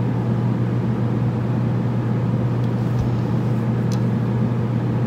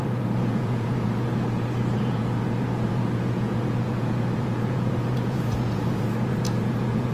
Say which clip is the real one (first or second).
first